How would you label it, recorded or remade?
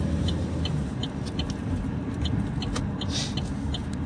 recorded